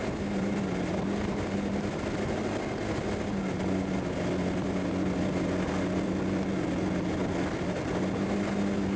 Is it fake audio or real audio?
real